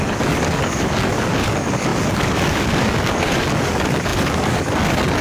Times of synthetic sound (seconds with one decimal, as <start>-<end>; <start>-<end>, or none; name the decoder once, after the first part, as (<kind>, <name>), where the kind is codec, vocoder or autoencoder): 0.0-5.2 (codec, DAC)